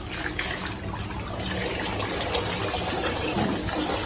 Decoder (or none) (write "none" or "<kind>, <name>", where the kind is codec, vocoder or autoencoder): none